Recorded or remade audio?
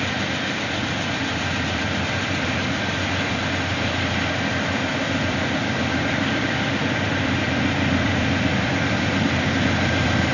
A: remade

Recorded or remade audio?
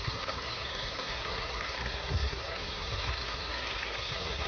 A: remade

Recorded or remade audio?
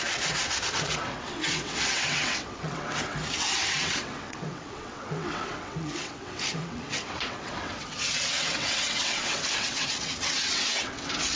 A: remade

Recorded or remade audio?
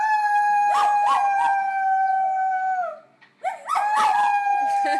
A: recorded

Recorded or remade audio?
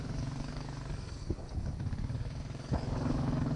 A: remade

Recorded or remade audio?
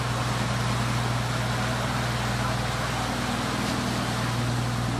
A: recorded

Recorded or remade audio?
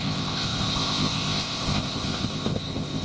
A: remade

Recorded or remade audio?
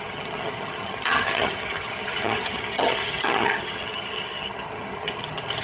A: remade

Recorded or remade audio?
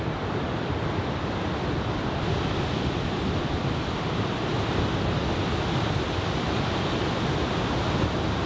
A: recorded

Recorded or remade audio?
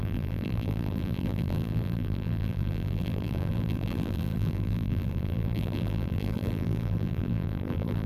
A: remade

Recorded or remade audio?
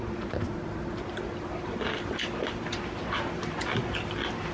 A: recorded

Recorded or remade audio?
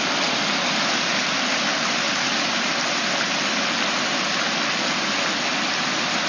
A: recorded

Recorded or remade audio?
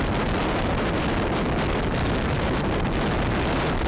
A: recorded